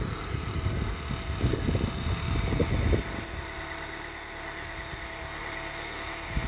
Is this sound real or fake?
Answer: real